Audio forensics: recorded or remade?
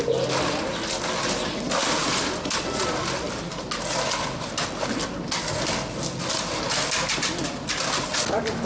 recorded